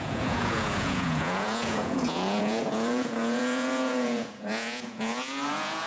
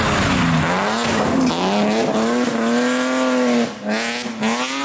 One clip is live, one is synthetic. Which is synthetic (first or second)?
first